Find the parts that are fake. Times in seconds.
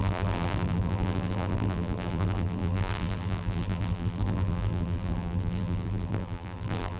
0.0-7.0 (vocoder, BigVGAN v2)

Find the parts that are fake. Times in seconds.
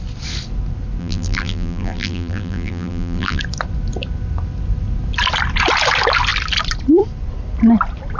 1.0-3.4 (vocoder, BigVGAN v2)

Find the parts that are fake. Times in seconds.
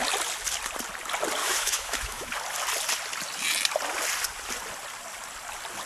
1.4-2.3 (autoencoder, DAC-VAE)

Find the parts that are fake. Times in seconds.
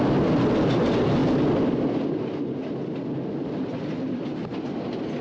none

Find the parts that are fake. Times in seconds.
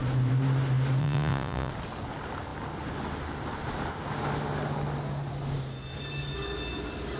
1.0-1.7 (vocoder, Vocos)